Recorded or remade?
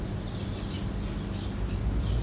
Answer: recorded